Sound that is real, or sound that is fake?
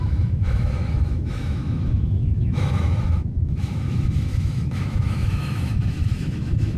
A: fake